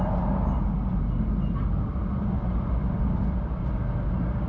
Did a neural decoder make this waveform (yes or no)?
no